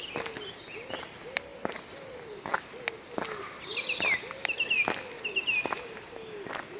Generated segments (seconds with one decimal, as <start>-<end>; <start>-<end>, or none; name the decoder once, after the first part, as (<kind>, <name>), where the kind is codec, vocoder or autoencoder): none